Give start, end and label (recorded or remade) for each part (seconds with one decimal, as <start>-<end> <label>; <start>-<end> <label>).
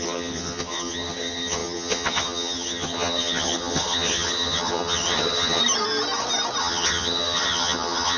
0.0-5.6 remade; 5.6-6.6 recorded; 6.6-8.2 remade